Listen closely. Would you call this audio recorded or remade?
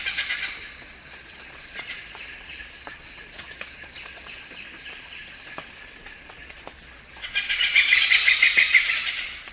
remade